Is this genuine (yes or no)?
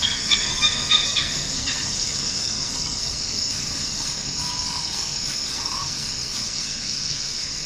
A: no